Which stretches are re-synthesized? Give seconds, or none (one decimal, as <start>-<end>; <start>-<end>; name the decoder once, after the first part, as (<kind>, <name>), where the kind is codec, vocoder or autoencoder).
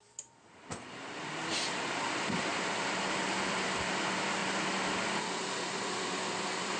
0.0-6.8 (vocoder, BigVGAN v2)